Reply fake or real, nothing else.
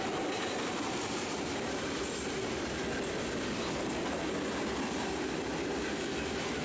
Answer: real